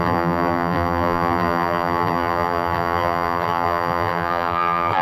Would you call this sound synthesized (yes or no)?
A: yes